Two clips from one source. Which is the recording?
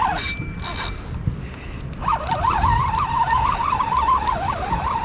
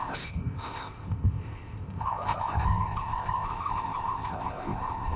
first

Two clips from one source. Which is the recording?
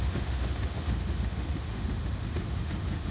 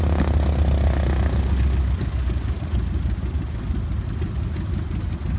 second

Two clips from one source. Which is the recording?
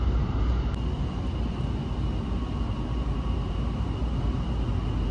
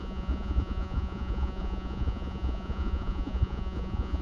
first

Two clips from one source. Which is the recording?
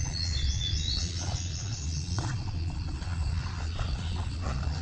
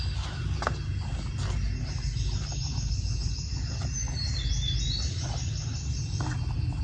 second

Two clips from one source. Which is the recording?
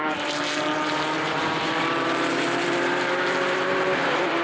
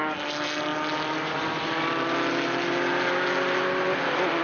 second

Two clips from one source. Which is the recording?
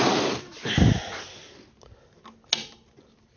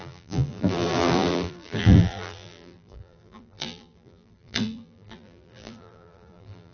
first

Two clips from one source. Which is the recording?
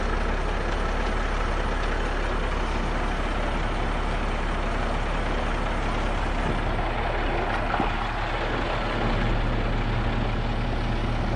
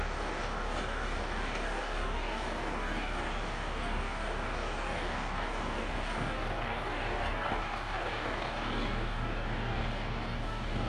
first